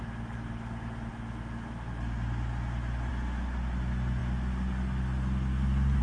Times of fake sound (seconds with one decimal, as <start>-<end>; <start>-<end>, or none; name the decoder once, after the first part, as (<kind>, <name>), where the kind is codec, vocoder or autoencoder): none